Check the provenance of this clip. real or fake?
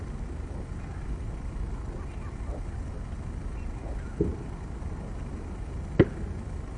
real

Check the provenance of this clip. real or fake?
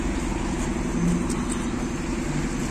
real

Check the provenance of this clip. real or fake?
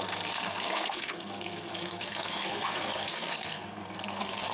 fake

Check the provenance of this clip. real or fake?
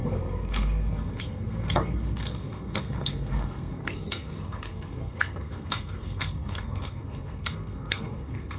fake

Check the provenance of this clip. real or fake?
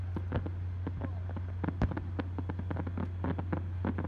real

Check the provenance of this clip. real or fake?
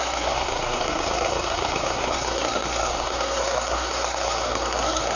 fake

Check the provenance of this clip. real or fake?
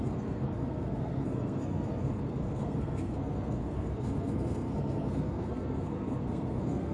fake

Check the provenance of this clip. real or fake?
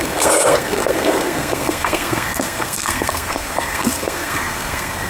fake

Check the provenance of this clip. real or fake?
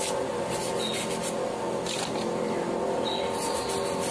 real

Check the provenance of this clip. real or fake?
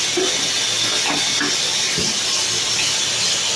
real